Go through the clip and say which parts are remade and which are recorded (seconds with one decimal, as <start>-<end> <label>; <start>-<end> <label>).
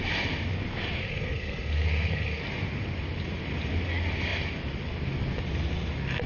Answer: 0.0-1.0 recorded; 1.0-2.4 remade; 2.4-6.3 recorded